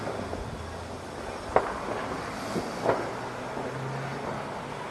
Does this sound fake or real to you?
real